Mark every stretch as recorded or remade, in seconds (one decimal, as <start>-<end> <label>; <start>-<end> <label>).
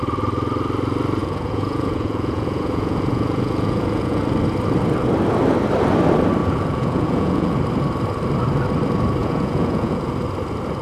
0.0-1.2 recorded; 1.2-4.2 remade; 4.2-6.4 recorded; 6.4-7.6 remade; 7.6-9.2 recorded; 9.2-10.1 remade; 10.1-10.8 recorded